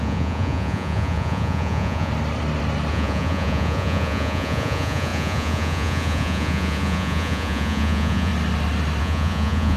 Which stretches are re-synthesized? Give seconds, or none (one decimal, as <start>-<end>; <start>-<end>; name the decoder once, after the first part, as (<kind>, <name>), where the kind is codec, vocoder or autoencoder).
0.0-2.1 (vocoder, Vocos); 2.9-8.3; 9.0-9.8